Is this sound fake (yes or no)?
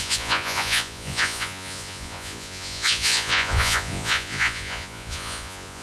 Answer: yes